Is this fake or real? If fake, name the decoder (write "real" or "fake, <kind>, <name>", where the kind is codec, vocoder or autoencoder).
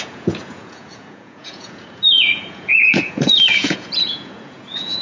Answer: fake, vocoder, Vocos